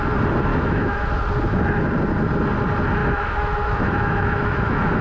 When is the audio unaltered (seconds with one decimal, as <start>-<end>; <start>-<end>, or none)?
0.0-0.5; 1.1-3.0